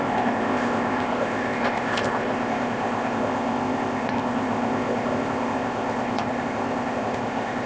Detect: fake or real fake